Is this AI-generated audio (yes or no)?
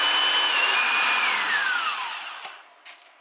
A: no